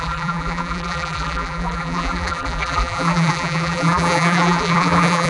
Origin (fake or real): fake